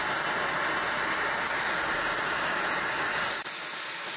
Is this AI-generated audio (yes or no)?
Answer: no